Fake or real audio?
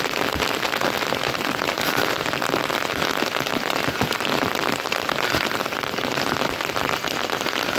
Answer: real